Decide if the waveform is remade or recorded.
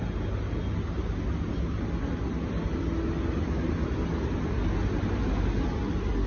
recorded